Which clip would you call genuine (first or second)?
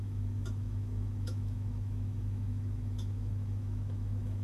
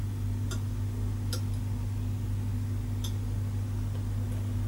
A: second